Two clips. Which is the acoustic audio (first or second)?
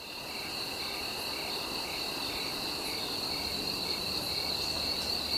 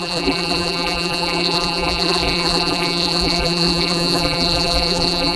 first